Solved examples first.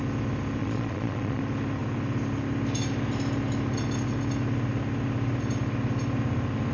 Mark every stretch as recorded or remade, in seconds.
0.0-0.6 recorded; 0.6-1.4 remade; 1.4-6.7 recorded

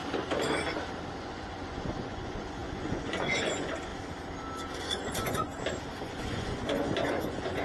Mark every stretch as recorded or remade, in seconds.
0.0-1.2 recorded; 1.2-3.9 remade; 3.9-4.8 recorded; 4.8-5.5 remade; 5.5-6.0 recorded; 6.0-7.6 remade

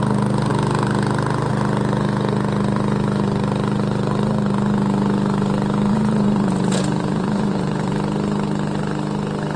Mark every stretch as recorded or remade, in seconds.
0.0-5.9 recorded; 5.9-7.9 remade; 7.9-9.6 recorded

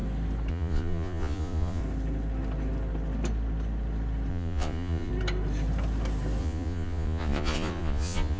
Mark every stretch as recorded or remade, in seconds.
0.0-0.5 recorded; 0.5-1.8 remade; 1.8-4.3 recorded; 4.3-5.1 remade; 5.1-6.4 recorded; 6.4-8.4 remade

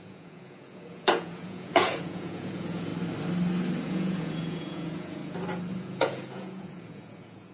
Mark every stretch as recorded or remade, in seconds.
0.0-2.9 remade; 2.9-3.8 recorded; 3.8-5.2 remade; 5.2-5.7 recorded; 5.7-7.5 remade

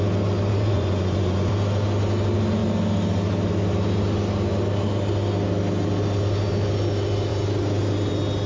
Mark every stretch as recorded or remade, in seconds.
0.0-0.5 recorded; 0.5-1.5 remade; 1.5-8.5 recorded